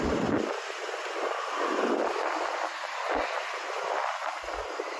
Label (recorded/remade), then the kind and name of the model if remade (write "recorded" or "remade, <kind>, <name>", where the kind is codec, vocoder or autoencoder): recorded